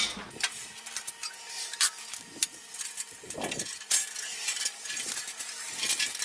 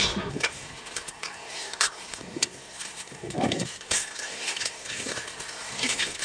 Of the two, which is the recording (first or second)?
first